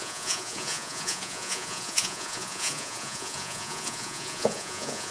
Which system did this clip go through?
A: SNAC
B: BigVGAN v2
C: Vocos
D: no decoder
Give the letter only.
C